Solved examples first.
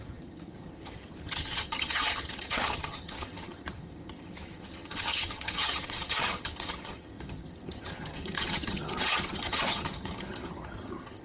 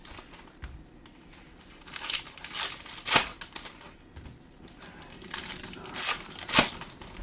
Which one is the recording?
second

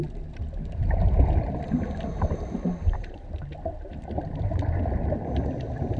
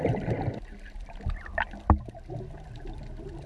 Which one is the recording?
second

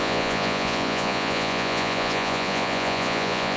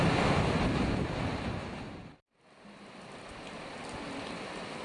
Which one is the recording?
second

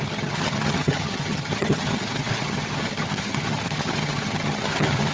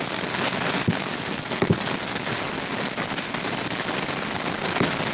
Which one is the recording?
second